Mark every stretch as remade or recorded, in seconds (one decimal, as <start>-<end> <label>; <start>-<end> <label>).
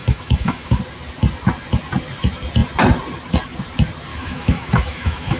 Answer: 0.0-0.8 remade; 0.8-4.1 recorded; 4.1-5.4 remade